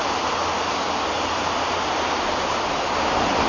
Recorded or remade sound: recorded